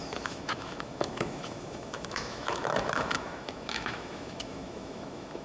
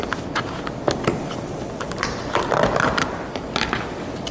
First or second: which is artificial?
first